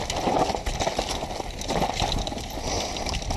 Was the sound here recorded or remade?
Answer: recorded